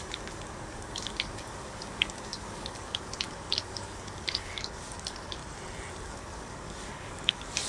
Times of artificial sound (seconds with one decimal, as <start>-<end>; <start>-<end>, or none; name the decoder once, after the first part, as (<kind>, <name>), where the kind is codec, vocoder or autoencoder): 0.0-5.4 (codec, DAC); 6.0-7.7